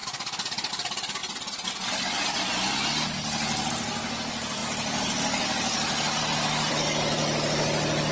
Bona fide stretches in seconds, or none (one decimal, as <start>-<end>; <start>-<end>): 0.0-8.1